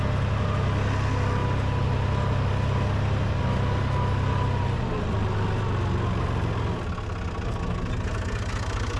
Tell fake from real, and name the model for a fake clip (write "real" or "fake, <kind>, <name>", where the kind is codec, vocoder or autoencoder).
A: real